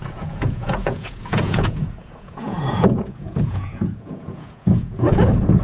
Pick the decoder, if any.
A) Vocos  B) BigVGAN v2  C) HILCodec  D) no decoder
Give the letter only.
A